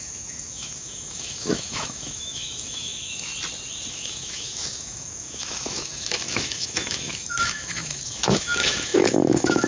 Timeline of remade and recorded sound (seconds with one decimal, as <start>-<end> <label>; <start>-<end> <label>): 0.0-3.3 remade; 3.3-3.9 recorded; 3.9-9.7 remade